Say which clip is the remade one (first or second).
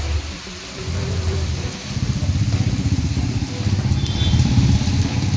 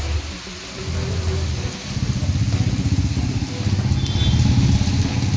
first